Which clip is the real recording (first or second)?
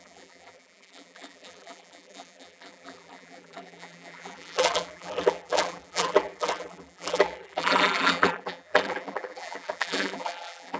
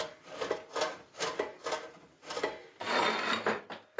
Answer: second